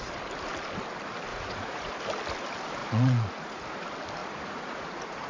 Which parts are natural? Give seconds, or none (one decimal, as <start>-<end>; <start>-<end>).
0.0-1.3; 1.9-2.8; 3.6-4.2